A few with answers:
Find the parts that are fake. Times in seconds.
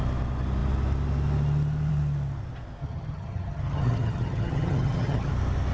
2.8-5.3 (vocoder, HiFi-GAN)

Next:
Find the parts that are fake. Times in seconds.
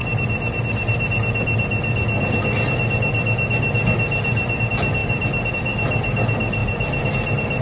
none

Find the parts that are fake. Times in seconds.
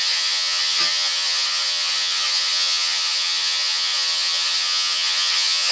0.0-5.7 (vocoder, HiFi-GAN)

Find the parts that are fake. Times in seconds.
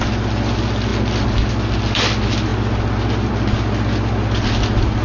none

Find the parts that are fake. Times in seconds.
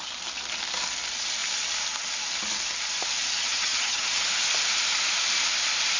3.4-4.1 (vocoder, HiFi-GAN)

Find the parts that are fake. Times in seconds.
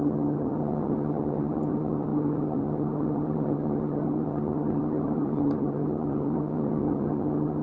0.0-7.6 (vocoder, HiFi-GAN)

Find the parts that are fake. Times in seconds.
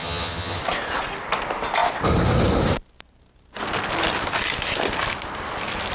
0.0-0.6 (vocoder, HiFi-GAN)